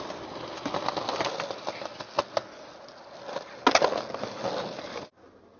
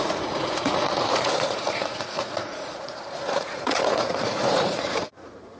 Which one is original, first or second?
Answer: first